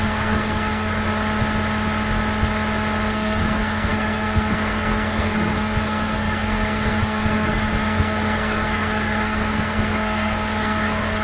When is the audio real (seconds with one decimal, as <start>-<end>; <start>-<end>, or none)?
1.1-3.1